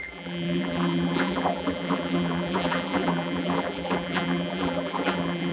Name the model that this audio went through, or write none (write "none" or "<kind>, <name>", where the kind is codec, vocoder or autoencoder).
vocoder, BigVGAN v2